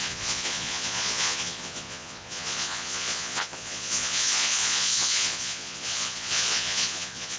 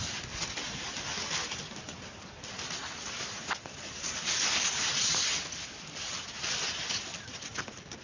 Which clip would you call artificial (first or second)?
first